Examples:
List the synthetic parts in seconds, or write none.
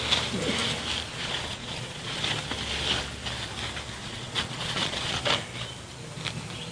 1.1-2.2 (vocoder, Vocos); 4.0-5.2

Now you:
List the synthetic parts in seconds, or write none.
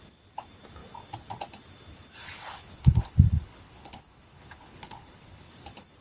2.2-5.5 (codec, HILCodec)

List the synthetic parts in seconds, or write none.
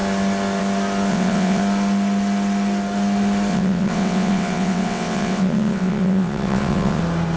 1.1-1.6 (vocoder, WaveNeXt); 3.5-7.0